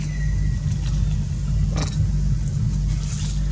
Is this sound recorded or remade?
recorded